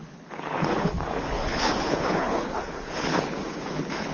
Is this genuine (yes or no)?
no